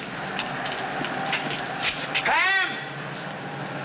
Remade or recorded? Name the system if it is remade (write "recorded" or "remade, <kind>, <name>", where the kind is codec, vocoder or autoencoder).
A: recorded